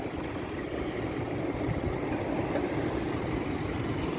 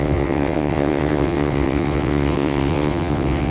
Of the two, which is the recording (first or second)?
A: first